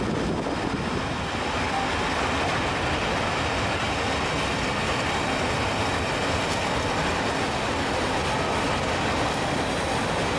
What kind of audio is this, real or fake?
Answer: real